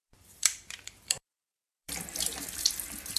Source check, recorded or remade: remade